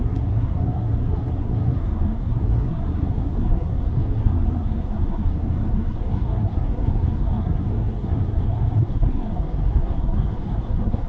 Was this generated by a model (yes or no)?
yes